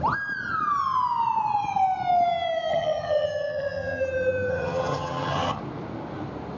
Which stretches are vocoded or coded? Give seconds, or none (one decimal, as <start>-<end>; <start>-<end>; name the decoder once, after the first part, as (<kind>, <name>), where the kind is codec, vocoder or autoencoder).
2.7-4.0 (vocoder, HiFi-GAN); 4.5-5.6

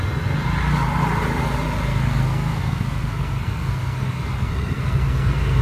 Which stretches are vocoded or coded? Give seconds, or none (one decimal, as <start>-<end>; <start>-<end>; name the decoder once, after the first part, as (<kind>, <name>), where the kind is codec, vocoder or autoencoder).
1.9-5.6 (codec, SNAC)

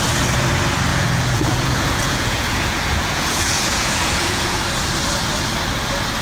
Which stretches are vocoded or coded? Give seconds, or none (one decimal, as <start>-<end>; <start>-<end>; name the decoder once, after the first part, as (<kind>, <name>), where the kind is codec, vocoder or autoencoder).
0.9-4.6 (vocoder, Vocos)